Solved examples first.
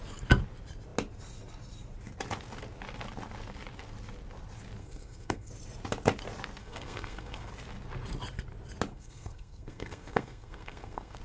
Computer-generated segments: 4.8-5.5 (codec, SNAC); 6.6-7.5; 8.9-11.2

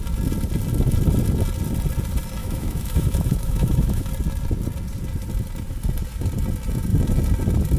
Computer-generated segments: 2.4-4.1 (autoencoder, DAC-VAE)

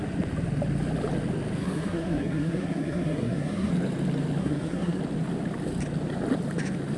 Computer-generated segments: 1.6-3.7 (codec, SNAC); 4.4-5.0